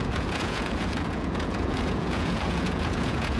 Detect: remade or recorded remade